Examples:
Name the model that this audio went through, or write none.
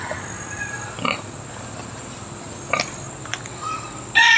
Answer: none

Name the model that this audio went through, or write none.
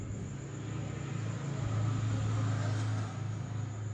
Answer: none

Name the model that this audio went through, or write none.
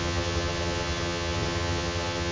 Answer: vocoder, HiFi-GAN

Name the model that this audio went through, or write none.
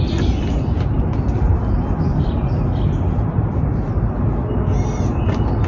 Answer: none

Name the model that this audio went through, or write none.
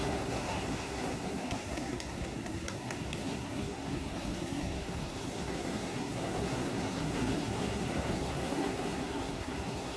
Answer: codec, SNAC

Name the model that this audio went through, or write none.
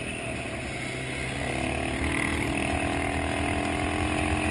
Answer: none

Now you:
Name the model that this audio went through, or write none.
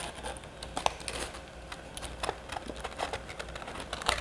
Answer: none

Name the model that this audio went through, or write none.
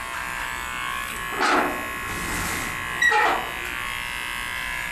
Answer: none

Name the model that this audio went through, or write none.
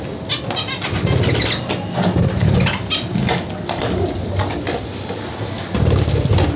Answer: none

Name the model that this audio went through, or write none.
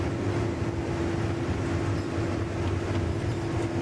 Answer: none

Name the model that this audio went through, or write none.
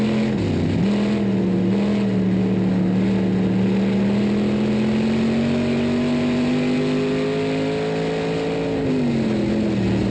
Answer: none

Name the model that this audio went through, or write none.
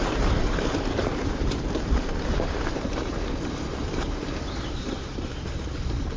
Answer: vocoder, BigVGAN v2